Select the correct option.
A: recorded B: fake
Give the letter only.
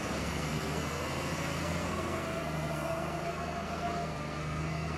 B